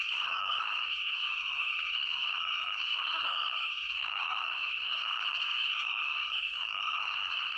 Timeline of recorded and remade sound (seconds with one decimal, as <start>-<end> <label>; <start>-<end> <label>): 0.0-7.6 remade